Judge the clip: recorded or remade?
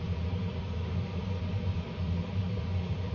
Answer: remade